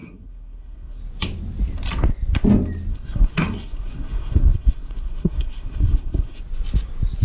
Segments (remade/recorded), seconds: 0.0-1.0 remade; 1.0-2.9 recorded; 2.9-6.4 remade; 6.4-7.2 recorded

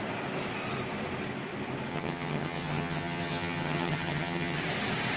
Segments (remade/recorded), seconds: 0.0-1.9 recorded; 1.9-4.6 remade; 4.6-5.2 recorded

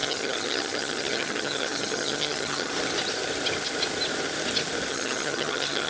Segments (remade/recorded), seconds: 0.0-2.7 remade; 2.7-4.9 recorded; 4.9-5.9 remade

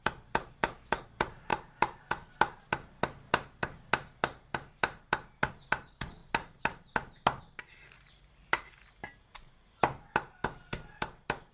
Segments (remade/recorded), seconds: 0.0-11.5 recorded

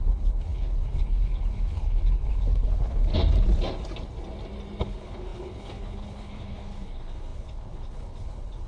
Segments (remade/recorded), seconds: 0.0-3.1 remade; 3.1-4.8 recorded; 4.8-8.7 remade